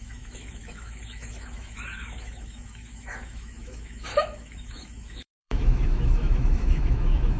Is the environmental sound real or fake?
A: fake